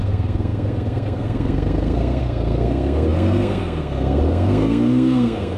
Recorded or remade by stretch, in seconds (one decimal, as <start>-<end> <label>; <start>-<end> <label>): 0.0-5.6 remade